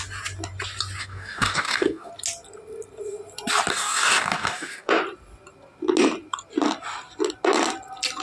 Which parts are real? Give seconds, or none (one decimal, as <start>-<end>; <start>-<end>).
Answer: 0.0-1.0; 2.1-3.7; 4.9-8.2